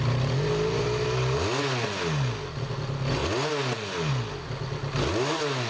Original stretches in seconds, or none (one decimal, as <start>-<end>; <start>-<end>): 0.0-5.7